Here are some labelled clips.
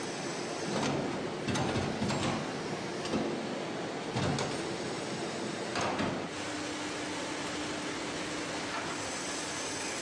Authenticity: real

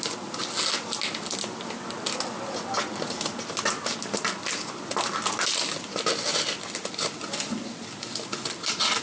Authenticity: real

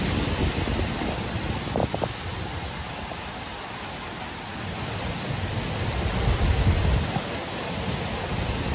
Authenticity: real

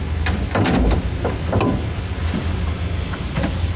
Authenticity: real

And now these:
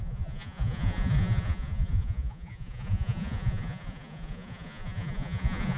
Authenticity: fake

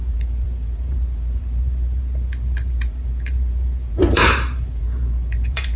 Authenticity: fake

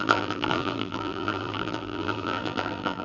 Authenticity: fake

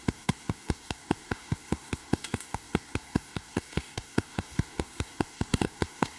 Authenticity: fake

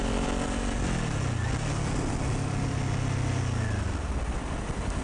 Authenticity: real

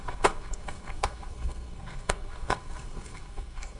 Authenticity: fake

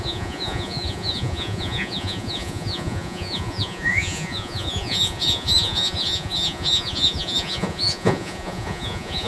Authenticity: fake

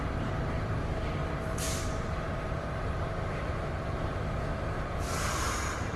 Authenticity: fake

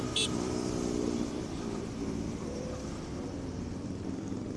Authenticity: fake